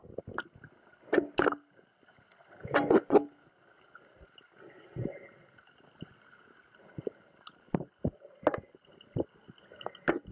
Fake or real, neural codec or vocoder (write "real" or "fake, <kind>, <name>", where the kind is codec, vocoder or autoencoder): real